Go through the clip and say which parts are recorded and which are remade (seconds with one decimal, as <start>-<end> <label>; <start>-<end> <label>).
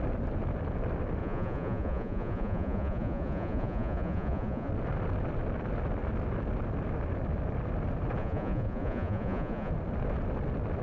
0.0-1.2 recorded; 1.2-4.7 remade; 4.7-8.2 recorded; 8.2-9.7 remade; 9.7-10.8 recorded